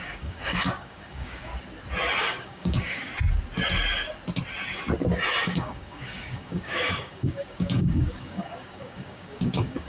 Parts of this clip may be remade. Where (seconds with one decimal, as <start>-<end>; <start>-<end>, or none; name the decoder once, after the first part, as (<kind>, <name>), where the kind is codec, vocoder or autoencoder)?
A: 0.0-1.5 (codec, DAC); 2.2-3.1; 5.4-9.9